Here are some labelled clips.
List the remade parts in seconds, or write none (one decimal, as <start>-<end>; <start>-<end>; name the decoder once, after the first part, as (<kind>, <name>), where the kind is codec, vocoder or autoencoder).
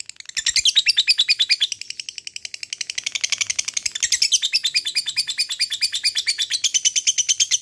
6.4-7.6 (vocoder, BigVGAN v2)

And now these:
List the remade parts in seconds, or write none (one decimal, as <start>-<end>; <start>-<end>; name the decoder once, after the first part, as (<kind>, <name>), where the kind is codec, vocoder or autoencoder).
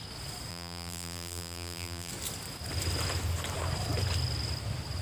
0.5-2.1 (vocoder, BigVGAN v2)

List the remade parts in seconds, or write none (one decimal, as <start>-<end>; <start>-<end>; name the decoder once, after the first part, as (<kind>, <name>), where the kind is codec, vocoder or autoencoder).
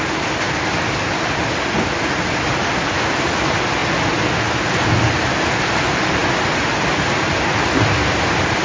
none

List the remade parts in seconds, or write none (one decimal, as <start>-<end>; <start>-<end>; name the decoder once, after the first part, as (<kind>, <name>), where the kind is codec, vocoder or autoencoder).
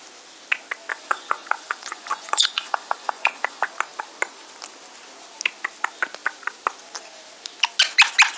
0.9-3.7 (vocoder, Vocos)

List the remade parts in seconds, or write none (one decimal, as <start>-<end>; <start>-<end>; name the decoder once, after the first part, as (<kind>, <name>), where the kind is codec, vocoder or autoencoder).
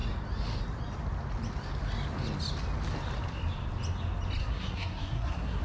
4.4-5.6 (codec, SNAC)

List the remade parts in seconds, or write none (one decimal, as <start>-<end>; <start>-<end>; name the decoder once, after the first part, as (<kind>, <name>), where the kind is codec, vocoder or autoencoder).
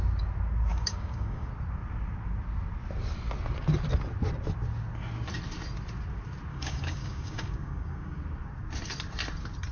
0.7-1.5 (codec, DAC); 6.5-8.2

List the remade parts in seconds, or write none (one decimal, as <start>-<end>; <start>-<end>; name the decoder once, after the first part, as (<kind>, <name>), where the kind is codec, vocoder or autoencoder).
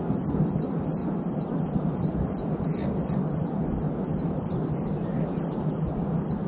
none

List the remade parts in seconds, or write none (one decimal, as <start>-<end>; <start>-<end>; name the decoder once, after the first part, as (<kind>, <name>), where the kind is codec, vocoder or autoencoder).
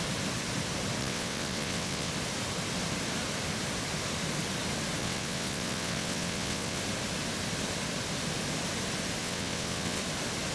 1.0-2.1 (vocoder, WaveNeXt); 5.0-6.8; 9.2-10.0